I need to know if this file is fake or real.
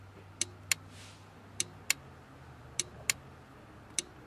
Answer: real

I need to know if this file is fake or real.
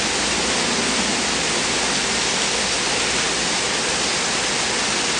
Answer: real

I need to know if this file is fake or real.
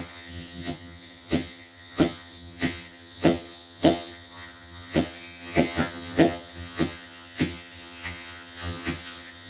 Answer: fake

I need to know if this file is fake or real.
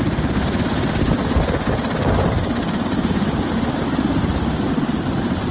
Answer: real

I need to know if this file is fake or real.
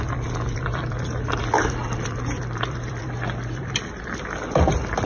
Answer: fake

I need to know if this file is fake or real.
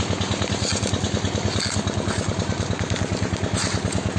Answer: real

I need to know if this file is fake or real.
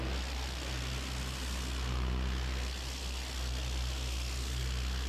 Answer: real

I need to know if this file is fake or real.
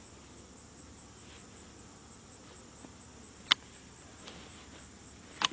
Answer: real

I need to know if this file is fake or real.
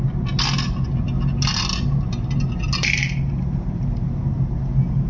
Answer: real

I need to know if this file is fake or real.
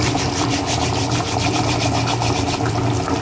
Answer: real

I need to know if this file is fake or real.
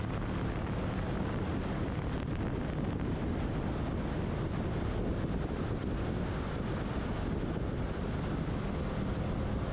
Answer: real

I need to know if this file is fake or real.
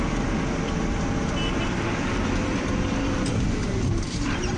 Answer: fake